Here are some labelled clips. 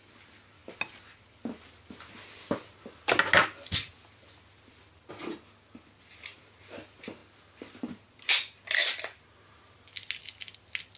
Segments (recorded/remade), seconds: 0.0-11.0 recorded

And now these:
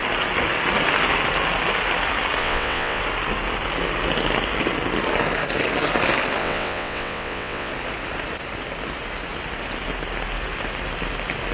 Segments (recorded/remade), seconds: 0.0-2.4 recorded; 2.4-3.0 remade; 3.0-6.4 recorded; 6.4-7.7 remade; 7.7-11.5 recorded

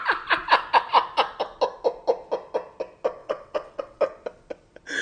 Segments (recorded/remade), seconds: 0.0-3.2 recorded; 3.2-4.0 remade; 4.0-5.0 recorded

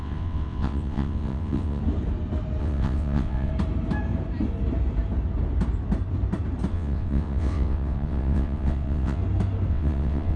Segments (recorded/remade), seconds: 0.0-1.8 remade; 1.8-2.6 recorded; 2.6-3.5 remade; 3.5-6.7 recorded; 6.7-9.2 remade; 9.2-9.7 recorded; 9.7-10.4 remade